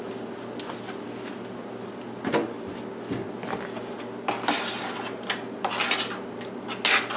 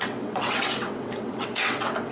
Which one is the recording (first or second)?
first